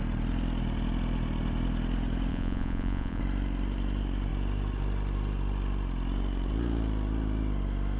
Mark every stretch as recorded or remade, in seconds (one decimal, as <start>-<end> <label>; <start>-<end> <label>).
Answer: 0.0-2.3 recorded; 2.3-3.2 remade; 3.2-8.0 recorded

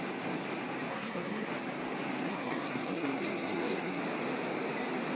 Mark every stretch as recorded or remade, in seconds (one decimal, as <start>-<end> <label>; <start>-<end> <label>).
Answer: 0.0-0.9 recorded; 0.9-1.5 remade; 1.5-2.3 recorded; 2.3-4.0 remade; 4.0-5.2 recorded

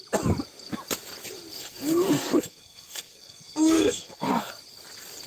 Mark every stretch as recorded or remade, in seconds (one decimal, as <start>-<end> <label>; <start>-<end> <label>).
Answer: 0.0-1.6 recorded; 1.6-4.5 remade; 4.5-5.3 recorded